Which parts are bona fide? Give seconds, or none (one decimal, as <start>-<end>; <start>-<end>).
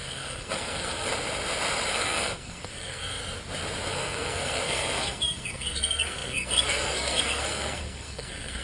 1.1-1.9; 3.2-3.9